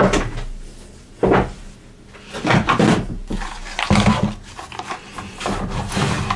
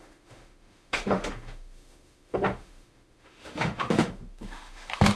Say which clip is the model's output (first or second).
second